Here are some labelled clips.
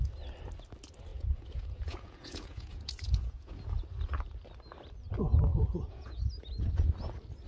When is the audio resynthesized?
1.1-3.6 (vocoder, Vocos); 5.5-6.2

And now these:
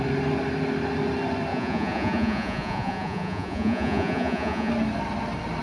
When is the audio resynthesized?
1.5-4.7 (vocoder, Vocos)

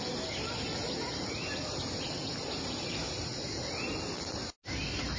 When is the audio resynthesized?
none

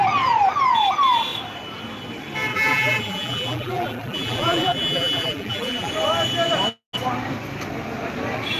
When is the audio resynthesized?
2.5-5.9 (vocoder, BigVGAN v2)

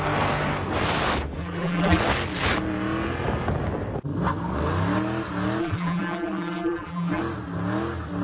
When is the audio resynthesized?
1.4-2.0 (vocoder, BigVGAN v2); 5.6-7.2